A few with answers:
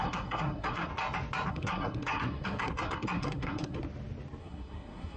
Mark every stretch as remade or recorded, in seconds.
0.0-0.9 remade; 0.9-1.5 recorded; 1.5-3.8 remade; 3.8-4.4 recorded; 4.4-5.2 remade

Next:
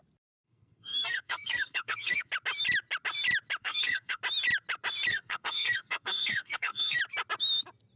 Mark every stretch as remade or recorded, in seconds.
0.0-0.4 recorded; 0.4-2.3 remade; 2.3-3.6 recorded; 3.6-4.2 remade; 4.2-5.1 recorded; 5.1-7.0 remade; 7.0-8.0 recorded

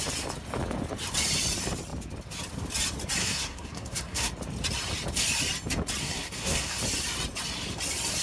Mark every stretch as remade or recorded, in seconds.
0.0-3.2 recorded; 3.2-4.3 remade; 4.3-6.0 recorded; 6.0-6.8 remade; 6.8-8.2 recorded

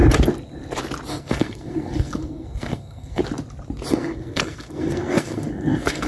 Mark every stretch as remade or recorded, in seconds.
0.0-1.1 recorded; 1.1-3.2 remade; 3.2-3.9 recorded; 3.9-6.1 remade

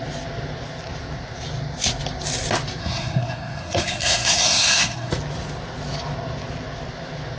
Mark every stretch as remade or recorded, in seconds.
0.0-2.8 recorded; 2.8-5.1 remade; 5.1-7.4 recorded

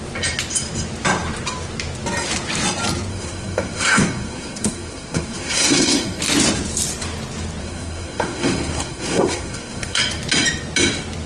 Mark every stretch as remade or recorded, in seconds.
0.0-3.1 recorded; 3.1-6.2 remade; 6.2-7.6 recorded; 7.6-10.0 remade; 10.0-11.3 recorded